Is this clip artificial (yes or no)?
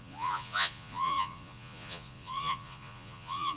yes